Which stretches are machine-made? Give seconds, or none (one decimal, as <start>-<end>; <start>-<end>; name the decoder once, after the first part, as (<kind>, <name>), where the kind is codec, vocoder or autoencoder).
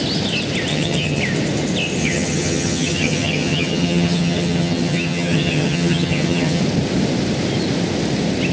0.7-1.2 (vocoder, HiFi-GAN); 2.0-6.6